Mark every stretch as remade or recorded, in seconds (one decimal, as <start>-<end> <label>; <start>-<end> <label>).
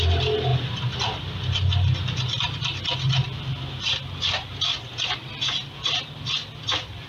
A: 0.0-7.1 recorded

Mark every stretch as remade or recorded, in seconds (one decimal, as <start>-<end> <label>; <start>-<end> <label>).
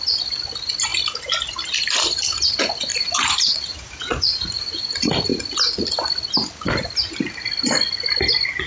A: 0.0-2.9 recorded; 2.9-4.8 remade; 4.8-8.7 recorded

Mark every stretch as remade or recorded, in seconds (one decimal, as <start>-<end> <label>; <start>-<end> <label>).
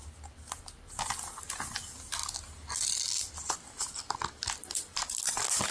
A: 0.0-5.7 recorded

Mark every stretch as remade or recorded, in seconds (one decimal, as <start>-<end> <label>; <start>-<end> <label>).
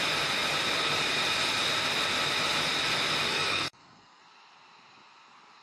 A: 0.0-3.3 recorded; 3.3-4.2 remade; 4.2-5.6 recorded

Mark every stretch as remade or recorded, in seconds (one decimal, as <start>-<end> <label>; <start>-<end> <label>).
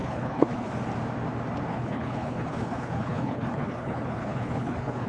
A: 0.0-0.7 remade; 0.7-1.7 recorded; 1.7-5.1 remade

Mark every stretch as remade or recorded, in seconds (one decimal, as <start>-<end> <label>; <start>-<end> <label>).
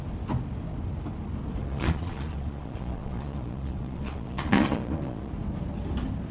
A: 0.0-1.6 recorded; 1.6-5.3 remade; 5.3-6.3 recorded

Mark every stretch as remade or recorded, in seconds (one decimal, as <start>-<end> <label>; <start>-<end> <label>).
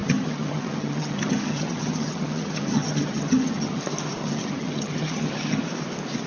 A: 0.0-3.8 remade; 3.8-4.2 recorded; 4.2-5.6 remade; 5.6-6.3 recorded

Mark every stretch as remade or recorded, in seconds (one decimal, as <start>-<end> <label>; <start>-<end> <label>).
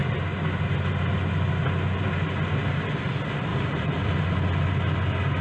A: 0.0-3.5 recorded; 3.5-4.1 remade; 4.1-5.4 recorded